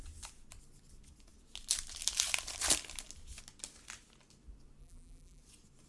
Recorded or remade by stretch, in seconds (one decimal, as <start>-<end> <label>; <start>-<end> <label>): 0.0-4.8 recorded; 4.8-5.4 remade; 5.4-5.9 recorded